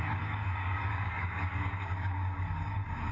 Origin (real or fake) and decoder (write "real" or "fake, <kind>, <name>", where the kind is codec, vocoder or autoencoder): fake, codec, DAC